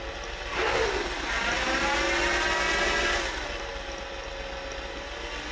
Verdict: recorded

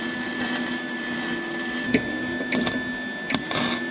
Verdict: recorded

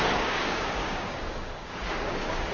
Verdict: remade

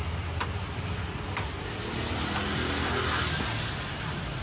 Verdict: recorded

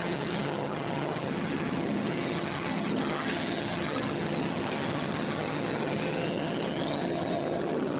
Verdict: remade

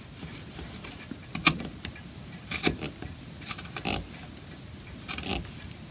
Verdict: recorded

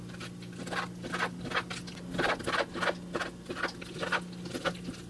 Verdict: recorded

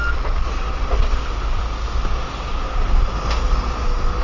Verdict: recorded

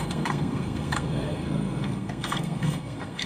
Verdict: remade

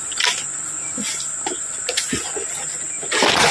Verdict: recorded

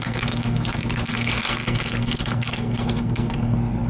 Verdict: remade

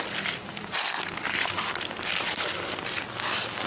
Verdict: recorded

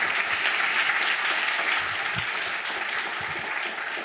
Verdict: recorded